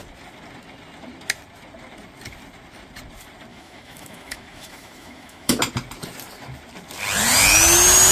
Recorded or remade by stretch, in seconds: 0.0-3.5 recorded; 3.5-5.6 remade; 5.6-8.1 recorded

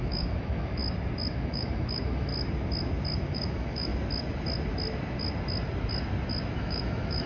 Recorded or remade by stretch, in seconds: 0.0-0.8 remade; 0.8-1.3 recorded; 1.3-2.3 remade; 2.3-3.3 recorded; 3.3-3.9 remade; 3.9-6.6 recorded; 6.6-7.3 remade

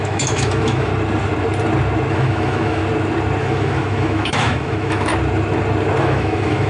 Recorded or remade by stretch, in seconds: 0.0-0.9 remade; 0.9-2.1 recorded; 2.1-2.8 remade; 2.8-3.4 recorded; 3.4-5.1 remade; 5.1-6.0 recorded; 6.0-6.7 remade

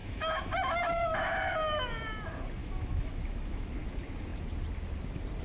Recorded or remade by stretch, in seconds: 0.0-1.5 remade; 1.5-2.6 recorded; 2.6-3.7 remade; 3.7-5.4 recorded

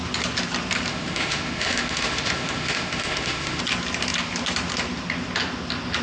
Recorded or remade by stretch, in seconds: 0.0-0.9 recorded; 0.9-3.6 remade; 3.6-6.0 recorded